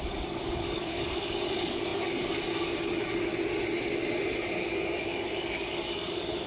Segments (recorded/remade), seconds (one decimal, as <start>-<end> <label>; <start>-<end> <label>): 0.0-3.3 remade; 3.3-4.6 recorded; 4.6-6.5 remade